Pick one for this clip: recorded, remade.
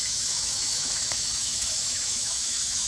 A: remade